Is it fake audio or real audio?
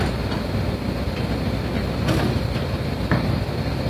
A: real